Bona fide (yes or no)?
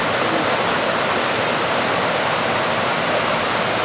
yes